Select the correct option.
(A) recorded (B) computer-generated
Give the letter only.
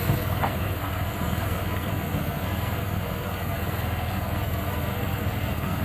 B